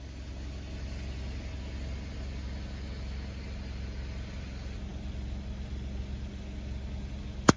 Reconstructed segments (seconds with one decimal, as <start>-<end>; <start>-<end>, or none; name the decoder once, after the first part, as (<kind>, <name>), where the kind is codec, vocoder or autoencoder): none